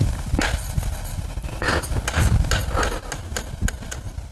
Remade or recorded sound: recorded